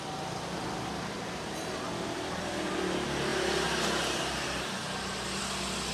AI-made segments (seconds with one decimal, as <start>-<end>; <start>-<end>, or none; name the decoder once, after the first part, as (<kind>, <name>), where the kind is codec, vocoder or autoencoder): none